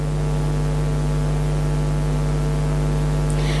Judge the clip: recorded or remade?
recorded